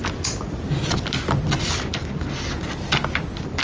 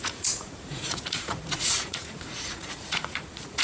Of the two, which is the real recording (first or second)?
first